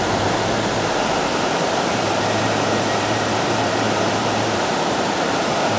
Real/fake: fake